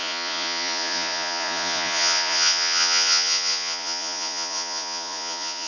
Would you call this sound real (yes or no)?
no